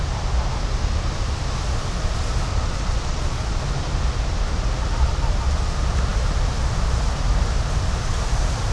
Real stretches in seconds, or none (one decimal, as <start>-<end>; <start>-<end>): 0.0-2.5; 3.6-8.7